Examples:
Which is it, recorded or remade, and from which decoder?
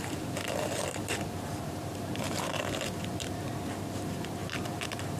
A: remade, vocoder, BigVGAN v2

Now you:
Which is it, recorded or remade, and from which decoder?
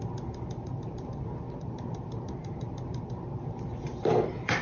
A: remade, vocoder, BigVGAN v2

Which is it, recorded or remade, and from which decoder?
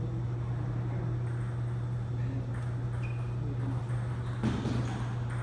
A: recorded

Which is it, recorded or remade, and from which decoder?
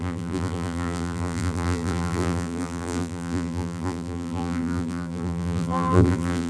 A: remade, vocoder, BigVGAN v2